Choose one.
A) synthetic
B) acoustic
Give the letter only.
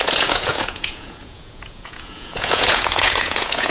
A